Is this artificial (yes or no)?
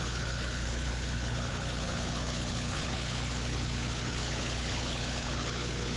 yes